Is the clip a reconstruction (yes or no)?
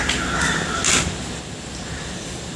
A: no